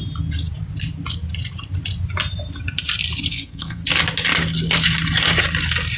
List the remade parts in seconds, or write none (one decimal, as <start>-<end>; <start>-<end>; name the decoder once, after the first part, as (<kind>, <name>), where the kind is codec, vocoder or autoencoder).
3.3-3.8 (codec, SNAC)